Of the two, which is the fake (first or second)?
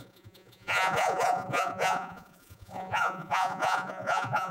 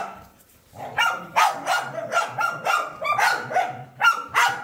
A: first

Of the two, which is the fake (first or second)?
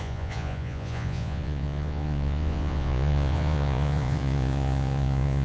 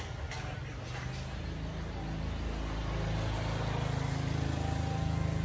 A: first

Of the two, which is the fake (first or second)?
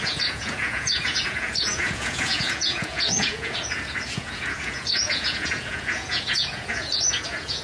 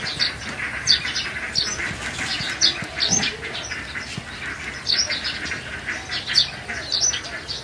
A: first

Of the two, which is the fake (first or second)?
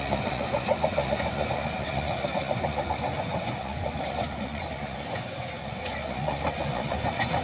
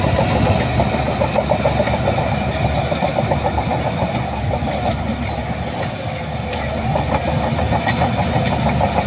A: first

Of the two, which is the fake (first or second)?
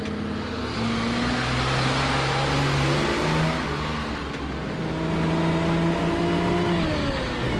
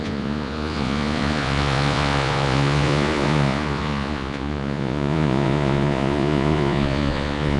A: second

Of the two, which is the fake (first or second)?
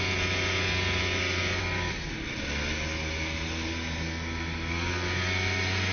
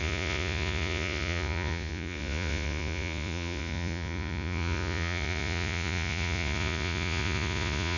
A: second